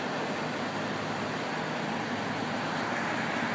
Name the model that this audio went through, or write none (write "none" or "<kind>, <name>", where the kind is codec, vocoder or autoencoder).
none